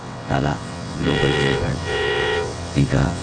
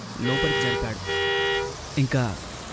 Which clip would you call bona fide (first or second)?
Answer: second